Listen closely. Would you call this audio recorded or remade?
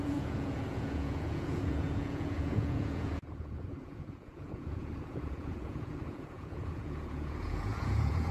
remade